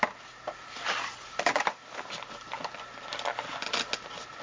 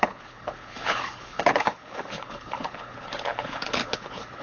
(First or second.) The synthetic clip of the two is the second